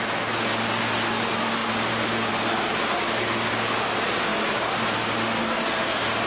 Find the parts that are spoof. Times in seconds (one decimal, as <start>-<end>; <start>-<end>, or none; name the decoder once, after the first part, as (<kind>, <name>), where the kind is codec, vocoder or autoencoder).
1.6-2.3 (vocoder, BigVGAN v2); 4.3-5.0